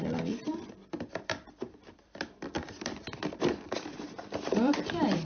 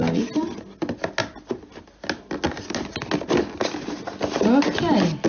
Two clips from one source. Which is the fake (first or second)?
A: first